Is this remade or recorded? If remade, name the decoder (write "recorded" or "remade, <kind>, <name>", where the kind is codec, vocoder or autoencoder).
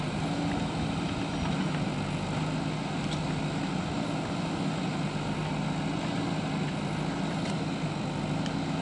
recorded